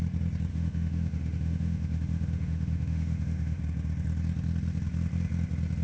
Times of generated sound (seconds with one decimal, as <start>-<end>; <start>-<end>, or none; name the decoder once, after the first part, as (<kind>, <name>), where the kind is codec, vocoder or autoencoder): 0.5-3.6 (autoencoder, DAC-VAE)